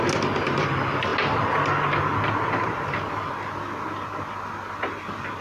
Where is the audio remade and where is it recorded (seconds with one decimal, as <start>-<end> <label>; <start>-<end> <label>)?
0.0-5.4 recorded